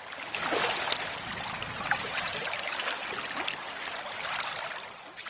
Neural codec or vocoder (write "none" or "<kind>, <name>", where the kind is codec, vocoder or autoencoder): none